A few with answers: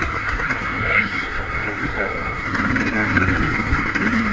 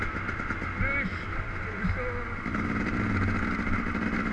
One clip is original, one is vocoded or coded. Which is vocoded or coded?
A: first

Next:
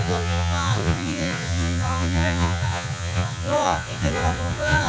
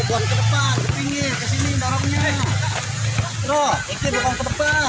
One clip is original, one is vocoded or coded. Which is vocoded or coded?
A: first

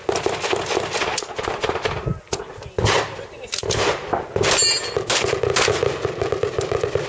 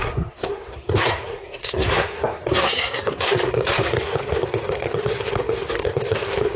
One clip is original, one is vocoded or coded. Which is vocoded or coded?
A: second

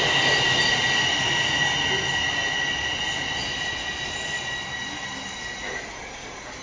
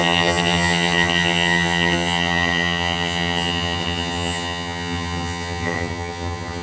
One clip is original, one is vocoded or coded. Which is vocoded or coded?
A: second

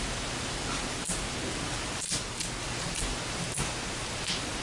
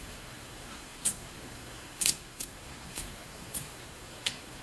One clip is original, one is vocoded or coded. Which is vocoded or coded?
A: second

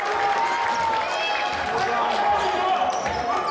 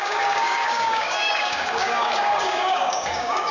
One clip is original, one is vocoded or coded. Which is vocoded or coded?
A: second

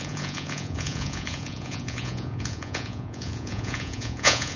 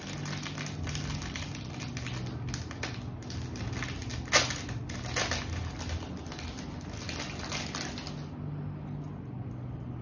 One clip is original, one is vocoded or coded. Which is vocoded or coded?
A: first